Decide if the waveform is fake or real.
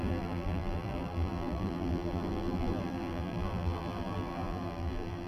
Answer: fake